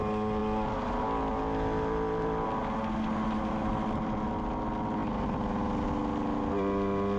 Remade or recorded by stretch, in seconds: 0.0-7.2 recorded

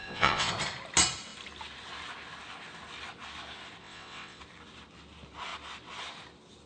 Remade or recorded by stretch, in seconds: 0.0-0.5 remade; 0.5-3.8 recorded; 3.8-4.4 remade; 4.4-6.7 recorded

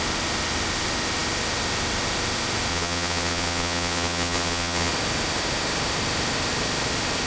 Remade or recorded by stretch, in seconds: 0.0-2.7 recorded; 2.7-4.9 remade; 4.9-7.3 recorded

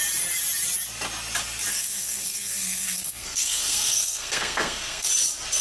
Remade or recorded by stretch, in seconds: 0.0-1.7 recorded; 1.7-5.1 remade; 5.1-5.6 recorded